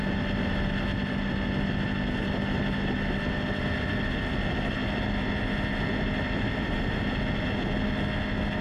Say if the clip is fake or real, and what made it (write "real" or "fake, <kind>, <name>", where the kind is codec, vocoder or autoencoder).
real